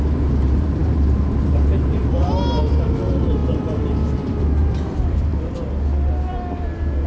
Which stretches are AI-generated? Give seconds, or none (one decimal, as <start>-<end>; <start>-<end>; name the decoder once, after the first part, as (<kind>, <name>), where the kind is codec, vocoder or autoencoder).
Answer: 0.0-3.4 (vocoder, BigVGAN v2); 4.4-5.3; 6.3-7.1